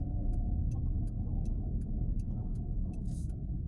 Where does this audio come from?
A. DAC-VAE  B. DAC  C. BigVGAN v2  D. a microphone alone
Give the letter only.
B